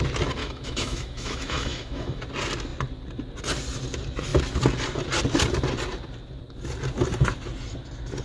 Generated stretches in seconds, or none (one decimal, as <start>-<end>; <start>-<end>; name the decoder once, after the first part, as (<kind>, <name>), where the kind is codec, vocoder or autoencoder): 0.4-2.2 (autoencoder, DAC-VAE)